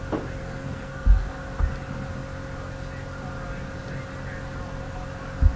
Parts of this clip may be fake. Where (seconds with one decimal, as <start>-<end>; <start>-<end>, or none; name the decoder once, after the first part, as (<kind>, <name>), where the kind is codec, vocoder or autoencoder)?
0.4-1.3 (codec, SNAC)